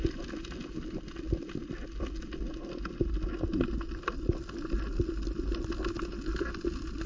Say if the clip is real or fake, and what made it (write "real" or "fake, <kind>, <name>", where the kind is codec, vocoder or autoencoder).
real